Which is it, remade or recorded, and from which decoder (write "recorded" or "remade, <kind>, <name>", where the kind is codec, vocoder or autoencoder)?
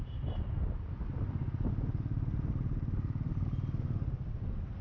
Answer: recorded